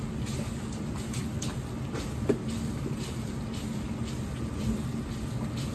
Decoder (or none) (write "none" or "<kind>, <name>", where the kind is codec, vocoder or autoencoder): none